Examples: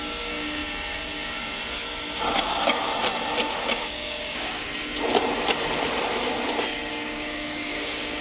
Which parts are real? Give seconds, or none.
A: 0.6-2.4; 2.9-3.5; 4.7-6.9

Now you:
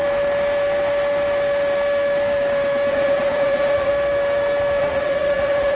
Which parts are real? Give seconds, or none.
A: 0.0-2.9; 3.9-4.8

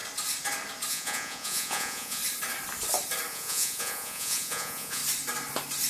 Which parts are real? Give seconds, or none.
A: 0.0-0.9; 2.2-3.3; 5.0-5.9